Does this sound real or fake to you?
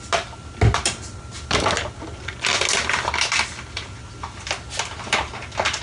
real